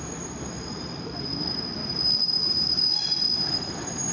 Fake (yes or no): yes